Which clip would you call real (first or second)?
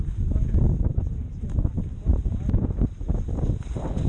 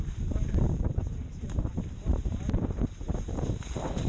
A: first